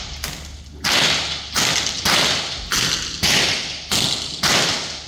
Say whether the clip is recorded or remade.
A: recorded